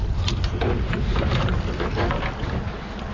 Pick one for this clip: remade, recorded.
recorded